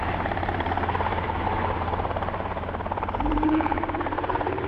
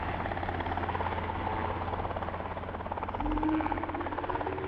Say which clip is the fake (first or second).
first